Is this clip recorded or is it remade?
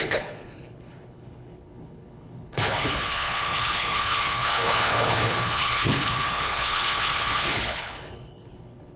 remade